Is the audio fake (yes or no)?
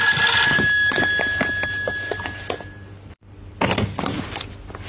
no